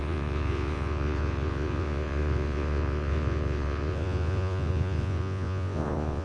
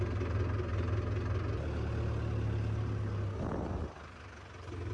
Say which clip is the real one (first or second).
second